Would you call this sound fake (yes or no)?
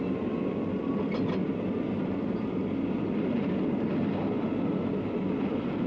no